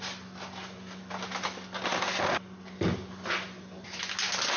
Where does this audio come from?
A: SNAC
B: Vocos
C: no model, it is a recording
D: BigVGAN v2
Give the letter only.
C